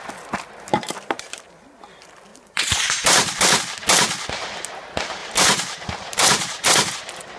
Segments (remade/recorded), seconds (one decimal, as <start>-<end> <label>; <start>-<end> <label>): 0.0-0.7 recorded; 0.7-1.5 remade; 1.5-2.3 recorded; 2.3-3.6 remade; 3.6-5.2 recorded; 5.2-6.9 remade; 6.9-7.4 recorded